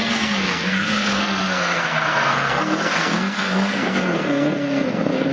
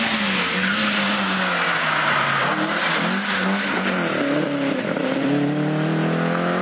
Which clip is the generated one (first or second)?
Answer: first